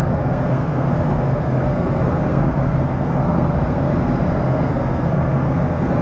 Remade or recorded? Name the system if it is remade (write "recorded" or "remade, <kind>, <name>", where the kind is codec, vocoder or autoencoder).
remade, codec, SNAC